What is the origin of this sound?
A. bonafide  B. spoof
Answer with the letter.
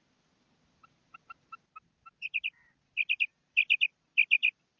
A